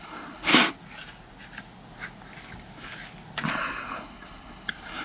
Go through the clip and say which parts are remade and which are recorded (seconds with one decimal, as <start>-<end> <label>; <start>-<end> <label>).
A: 0.0-0.5 remade; 0.5-3.5 recorded; 3.5-5.0 remade